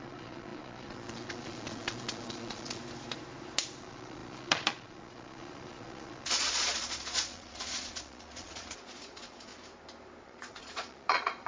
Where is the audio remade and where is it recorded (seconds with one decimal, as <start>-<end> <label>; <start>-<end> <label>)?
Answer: 0.0-2.8 remade; 2.8-3.8 recorded; 3.8-9.5 remade; 9.5-10.2 recorded; 10.2-11.5 remade

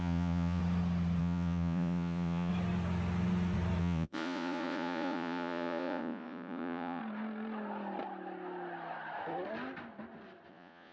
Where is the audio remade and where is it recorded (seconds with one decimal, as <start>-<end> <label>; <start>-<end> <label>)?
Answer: 0.0-0.6 remade; 0.6-1.2 recorded; 1.2-2.5 remade; 2.5-3.8 recorded; 3.8-7.0 remade; 7.0-10.5 recorded; 10.5-10.9 remade

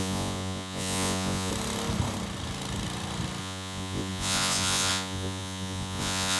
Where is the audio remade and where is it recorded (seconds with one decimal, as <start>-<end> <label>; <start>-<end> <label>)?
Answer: 0.0-1.5 remade; 1.5-3.4 recorded; 3.4-6.4 remade

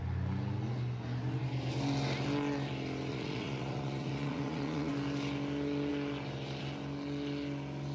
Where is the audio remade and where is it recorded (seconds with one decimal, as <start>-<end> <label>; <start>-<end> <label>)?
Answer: 0.0-3.1 recorded; 3.1-4.9 remade; 4.9-7.9 recorded